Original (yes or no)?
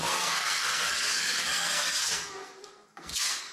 no